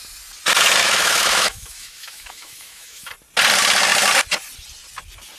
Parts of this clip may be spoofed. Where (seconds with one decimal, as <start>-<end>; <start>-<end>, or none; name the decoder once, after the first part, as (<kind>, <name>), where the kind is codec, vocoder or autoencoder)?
0.8-3.1 (autoencoder, DAC-VAE)